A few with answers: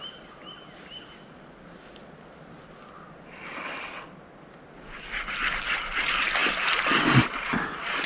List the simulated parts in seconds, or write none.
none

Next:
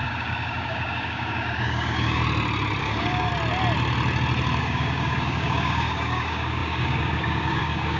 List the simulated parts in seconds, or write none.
0.0-2.2 (codec, DAC); 2.8-3.3; 4.6-8.0

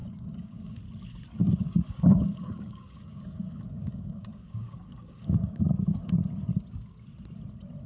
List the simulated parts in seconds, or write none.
0.0-0.8 (codec, DAC); 1.4-6.1

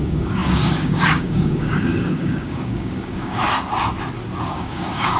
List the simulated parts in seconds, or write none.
0.0-3.4 (codec, DAC); 4.4-5.2

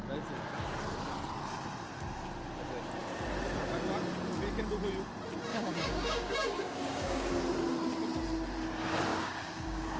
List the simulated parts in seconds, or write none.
5.5-7.3 (codec, DAC); 9.1-10.0